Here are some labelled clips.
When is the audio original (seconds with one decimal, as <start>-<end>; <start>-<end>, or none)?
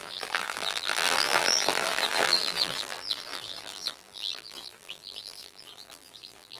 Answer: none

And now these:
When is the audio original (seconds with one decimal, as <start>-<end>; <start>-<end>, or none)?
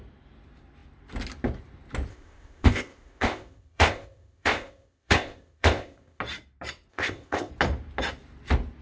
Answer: 0.0-2.1; 6.2-6.9; 7.5-8.8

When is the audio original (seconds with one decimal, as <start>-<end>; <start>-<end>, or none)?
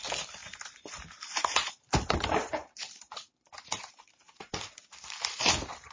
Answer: 0.0-0.4; 3.9-5.9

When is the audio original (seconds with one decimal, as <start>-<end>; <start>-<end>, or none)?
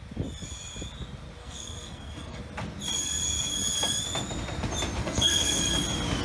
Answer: 0.0-1.4; 2.4-5.0; 5.6-6.2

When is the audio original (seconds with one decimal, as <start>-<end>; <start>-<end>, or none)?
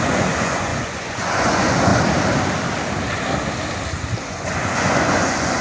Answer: 1.9-4.2